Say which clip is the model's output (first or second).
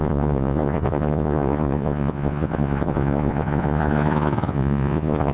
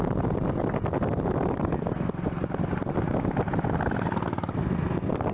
first